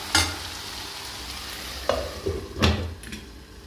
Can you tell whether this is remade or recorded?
recorded